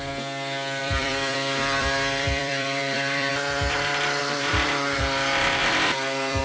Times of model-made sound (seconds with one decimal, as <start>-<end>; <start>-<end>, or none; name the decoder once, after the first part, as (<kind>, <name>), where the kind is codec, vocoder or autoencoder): 0.8-3.3 (vocoder, BigVGAN v2); 4.2-6.4